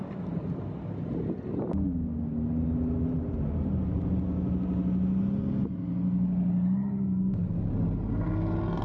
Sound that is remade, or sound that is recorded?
recorded